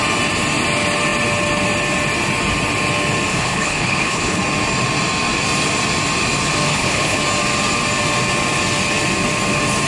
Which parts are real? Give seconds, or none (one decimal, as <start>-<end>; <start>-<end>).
0.0-3.3; 4.4-6.7; 7.2-9.9